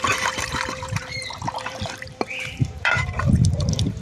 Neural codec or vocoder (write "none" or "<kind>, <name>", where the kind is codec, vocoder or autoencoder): vocoder, BigVGAN v2